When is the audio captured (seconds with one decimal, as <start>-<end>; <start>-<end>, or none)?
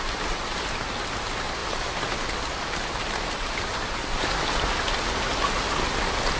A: 0.0-1.6; 4.8-6.4